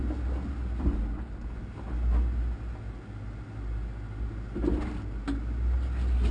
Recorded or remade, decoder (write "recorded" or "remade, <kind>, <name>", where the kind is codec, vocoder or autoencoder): recorded